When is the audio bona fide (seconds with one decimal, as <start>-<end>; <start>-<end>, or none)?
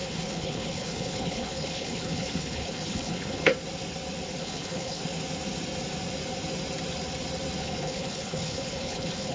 3.5-4.4; 5.0-7.6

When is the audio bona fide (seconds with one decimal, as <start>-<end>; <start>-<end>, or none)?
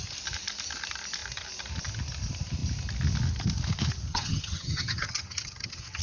0.0-4.1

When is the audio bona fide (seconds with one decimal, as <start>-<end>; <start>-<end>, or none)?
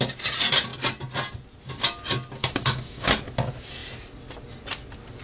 0.0-2.4; 3.1-5.2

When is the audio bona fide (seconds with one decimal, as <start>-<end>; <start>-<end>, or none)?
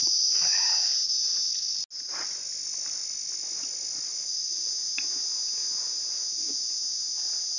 0.6-4.1; 4.7-7.6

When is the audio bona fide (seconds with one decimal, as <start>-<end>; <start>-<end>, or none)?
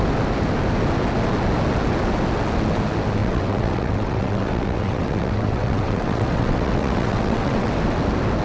0.0-3.2; 7.7-8.4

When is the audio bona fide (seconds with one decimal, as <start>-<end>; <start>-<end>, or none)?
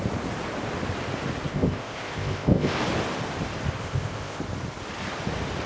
0.0-1.5; 2.8-3.8; 4.4-5.7